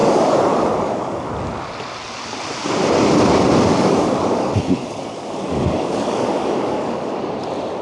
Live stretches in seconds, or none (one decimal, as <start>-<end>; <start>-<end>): 1.3-3.7; 7.2-7.8